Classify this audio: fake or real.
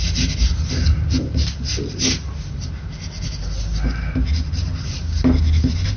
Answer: real